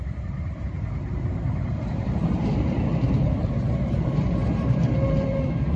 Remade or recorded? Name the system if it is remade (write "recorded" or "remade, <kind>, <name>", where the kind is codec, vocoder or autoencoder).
remade, vocoder, BigVGAN v2